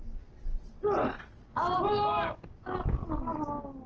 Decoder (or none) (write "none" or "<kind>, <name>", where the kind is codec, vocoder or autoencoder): none